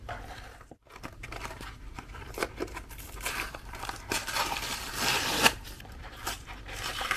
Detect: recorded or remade remade